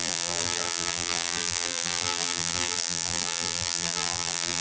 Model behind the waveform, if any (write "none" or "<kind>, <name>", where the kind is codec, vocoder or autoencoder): vocoder, BigVGAN v2